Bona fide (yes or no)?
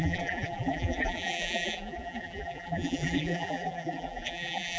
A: no